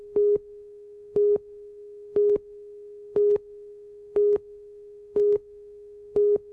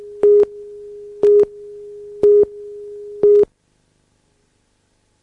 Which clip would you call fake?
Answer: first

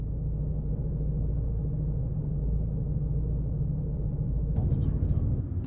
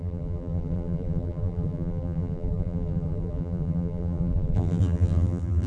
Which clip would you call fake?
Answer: second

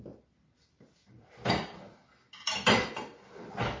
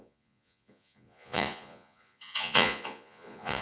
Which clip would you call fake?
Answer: second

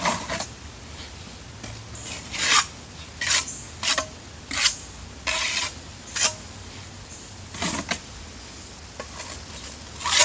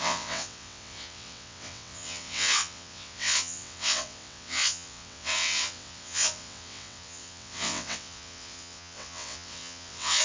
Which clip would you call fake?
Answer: second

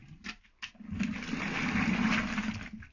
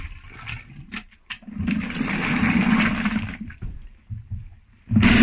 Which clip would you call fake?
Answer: second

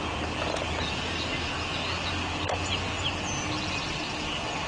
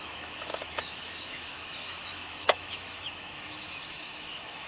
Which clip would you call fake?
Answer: second